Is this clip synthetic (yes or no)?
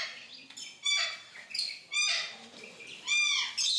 no